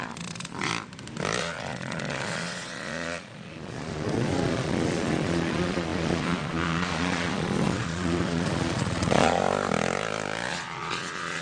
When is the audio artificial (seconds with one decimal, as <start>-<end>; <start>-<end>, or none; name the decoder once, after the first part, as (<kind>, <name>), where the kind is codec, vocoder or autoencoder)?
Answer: 0.0-0.7 (vocoder, Vocos); 1.4-9.4; 10.5-11.4